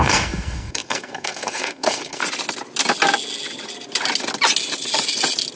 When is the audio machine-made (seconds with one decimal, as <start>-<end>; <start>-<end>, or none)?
0.0-2.2